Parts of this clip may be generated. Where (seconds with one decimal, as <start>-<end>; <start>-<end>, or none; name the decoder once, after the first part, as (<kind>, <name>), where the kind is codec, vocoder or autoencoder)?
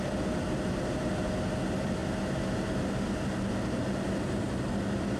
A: none